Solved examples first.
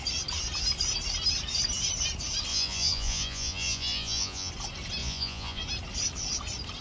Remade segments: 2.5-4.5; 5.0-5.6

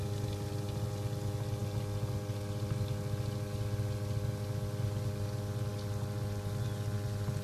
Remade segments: none

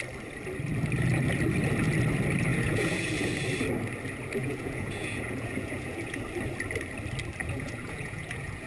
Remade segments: 2.5-3.3; 4.4-6.2; 7.4-8.7

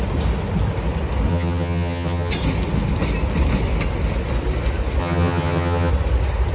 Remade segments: 1.3-2.3; 5.0-5.9